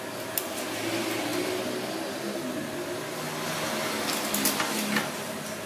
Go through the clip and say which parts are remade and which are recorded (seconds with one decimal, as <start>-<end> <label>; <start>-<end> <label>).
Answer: 0.0-5.7 recorded